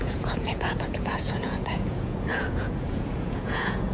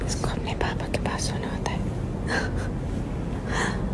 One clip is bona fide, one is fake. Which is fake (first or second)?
first